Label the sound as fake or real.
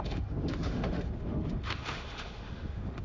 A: fake